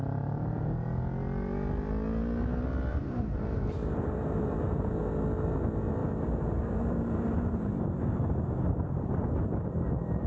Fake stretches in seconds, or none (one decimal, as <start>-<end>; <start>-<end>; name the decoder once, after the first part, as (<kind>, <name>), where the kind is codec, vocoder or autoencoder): 2.9-4.9 (vocoder, BigVGAN v2); 6.0-8.0